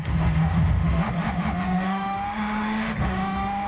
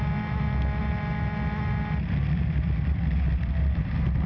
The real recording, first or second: second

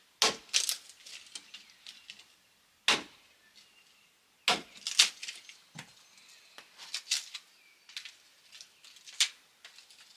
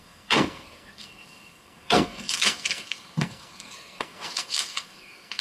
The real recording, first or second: first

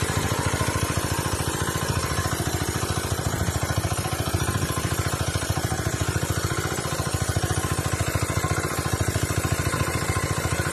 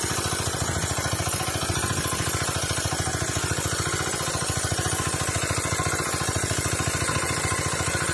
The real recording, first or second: second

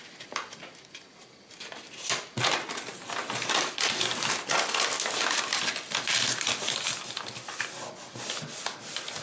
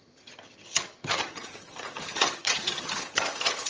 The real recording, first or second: first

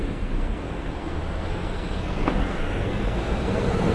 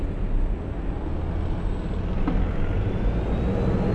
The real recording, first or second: second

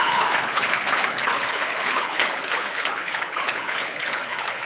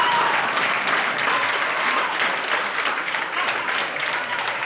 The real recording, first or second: second